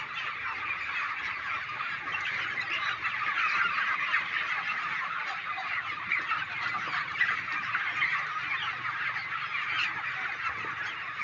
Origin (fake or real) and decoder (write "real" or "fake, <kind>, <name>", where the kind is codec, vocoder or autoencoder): real